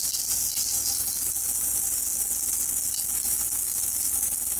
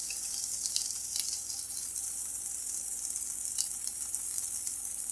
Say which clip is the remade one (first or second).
second